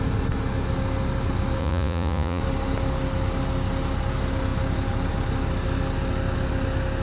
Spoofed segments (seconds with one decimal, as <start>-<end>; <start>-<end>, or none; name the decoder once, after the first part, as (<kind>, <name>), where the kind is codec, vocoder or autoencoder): 1.6-2.4 (vocoder, Vocos)